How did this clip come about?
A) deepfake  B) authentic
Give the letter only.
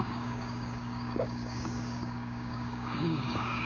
A